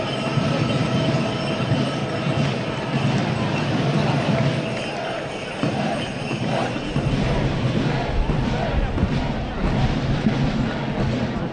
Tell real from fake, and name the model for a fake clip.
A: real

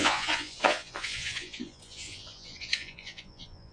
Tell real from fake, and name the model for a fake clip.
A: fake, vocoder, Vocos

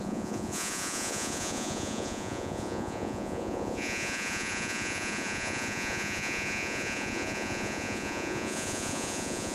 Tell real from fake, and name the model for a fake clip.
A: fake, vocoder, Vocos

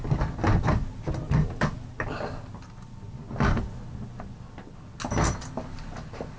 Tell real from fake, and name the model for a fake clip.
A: real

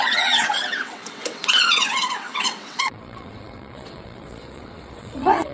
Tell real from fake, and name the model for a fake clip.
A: fake, vocoder, WaveNeXt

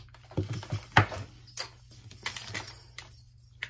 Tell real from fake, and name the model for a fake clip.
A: real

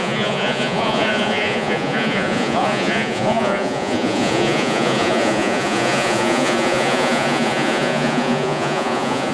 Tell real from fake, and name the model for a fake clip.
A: fake, vocoder, Vocos